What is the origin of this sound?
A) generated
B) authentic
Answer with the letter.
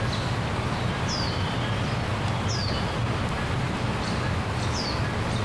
B